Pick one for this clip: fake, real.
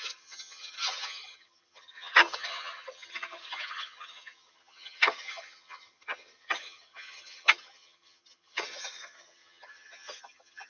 fake